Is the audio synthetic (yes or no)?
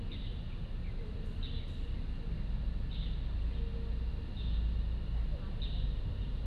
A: no